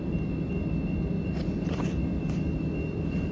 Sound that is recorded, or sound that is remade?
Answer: recorded